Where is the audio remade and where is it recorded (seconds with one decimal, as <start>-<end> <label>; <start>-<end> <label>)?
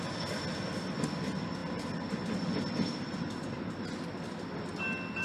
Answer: 0.0-5.2 recorded